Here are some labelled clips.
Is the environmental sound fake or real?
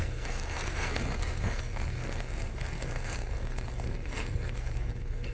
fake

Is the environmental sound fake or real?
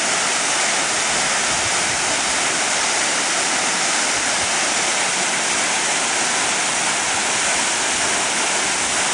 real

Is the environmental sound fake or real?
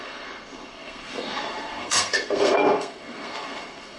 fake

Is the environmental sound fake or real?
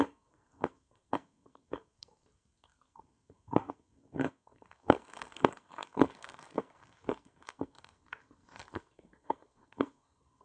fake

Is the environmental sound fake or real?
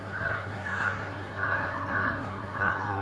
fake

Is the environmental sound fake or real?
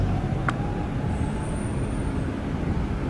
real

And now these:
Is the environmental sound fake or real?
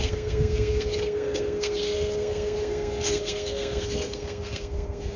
fake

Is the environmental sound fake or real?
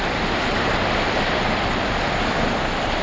real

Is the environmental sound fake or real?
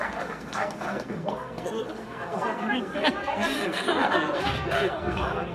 fake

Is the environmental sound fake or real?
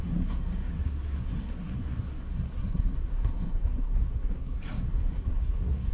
fake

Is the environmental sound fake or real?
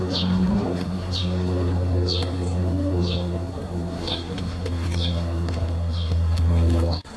fake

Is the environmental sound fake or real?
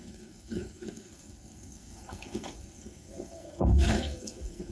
fake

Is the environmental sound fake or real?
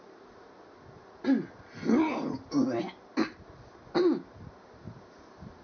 real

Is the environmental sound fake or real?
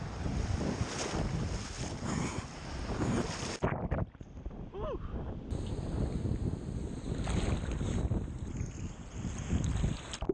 real